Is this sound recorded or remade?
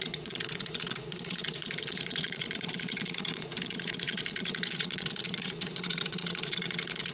remade